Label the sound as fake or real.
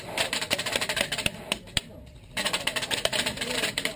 real